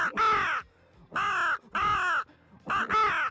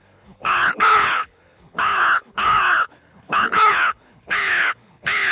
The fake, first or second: second